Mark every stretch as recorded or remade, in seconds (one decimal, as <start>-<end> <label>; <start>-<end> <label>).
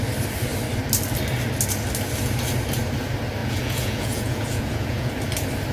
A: 0.0-3.4 recorded; 3.4-5.1 remade; 5.1-5.7 recorded